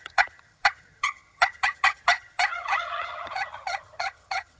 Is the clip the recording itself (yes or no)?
no